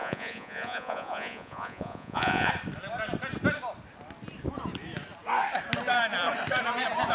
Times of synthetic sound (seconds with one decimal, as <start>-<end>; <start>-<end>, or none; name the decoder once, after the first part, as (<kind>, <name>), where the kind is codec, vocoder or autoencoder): 0.0-2.5 (vocoder, Vocos)